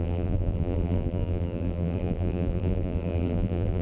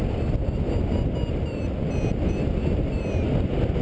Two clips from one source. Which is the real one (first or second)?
second